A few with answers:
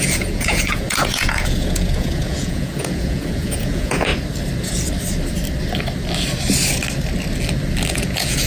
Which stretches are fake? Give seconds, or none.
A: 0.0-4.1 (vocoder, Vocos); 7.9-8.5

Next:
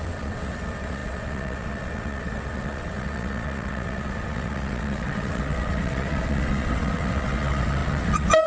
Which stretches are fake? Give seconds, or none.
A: 0.0-8.5 (vocoder, WaveNeXt)

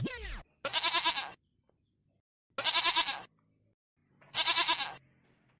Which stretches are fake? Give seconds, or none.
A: none